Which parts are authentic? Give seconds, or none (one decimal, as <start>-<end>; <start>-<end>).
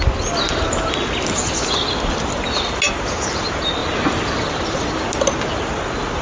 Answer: 0.0-6.2